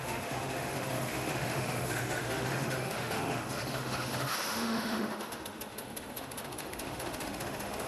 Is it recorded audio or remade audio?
remade